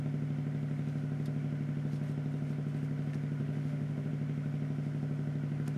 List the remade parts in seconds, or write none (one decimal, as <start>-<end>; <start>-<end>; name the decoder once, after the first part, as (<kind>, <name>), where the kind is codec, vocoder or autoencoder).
3.4-4.1 (autoencoder, DAC-VAE)